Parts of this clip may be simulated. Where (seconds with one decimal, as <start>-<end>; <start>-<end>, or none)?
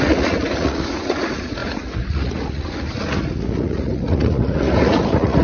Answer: 0.0-5.4